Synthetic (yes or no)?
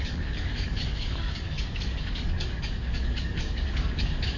yes